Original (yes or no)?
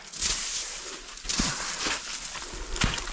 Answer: yes